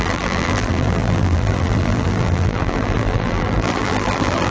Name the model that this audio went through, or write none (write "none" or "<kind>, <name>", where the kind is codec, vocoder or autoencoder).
vocoder, BigVGAN v2